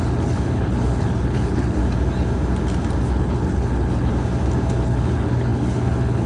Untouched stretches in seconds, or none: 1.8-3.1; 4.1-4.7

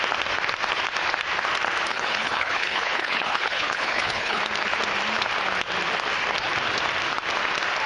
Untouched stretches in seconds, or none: 0.0-1.9; 4.4-7.9